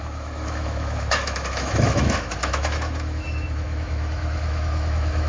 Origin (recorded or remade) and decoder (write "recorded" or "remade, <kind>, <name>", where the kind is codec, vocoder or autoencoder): remade, autoencoder, DAC-VAE